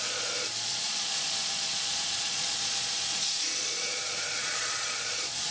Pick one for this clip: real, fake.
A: fake